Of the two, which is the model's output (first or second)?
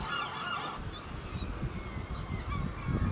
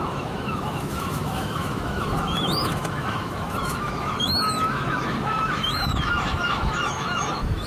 second